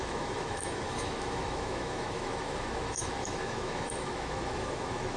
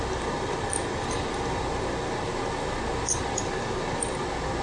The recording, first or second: second